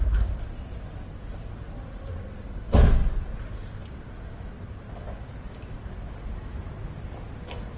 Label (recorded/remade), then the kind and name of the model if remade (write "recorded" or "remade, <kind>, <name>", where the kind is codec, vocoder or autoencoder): recorded